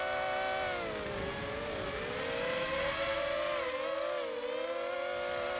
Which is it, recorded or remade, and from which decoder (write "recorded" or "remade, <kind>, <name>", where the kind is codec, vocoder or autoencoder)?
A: recorded